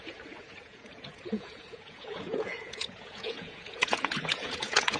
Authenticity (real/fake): fake